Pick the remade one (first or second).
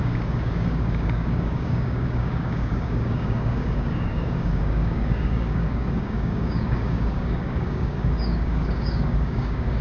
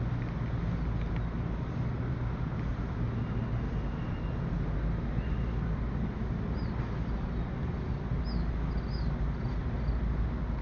first